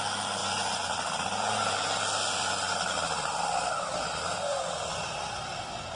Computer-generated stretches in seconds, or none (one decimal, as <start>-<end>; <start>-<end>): none